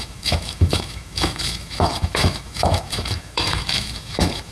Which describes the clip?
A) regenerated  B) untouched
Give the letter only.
A